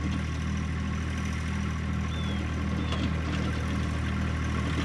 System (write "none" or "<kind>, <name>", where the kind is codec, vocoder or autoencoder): none